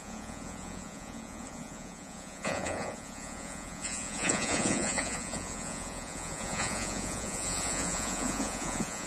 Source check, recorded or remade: remade